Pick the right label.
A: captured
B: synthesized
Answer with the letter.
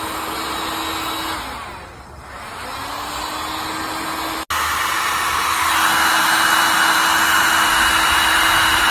A